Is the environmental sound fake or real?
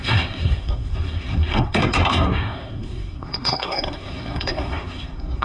fake